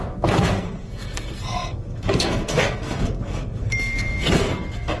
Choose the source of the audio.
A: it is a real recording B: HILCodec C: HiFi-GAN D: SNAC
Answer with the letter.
D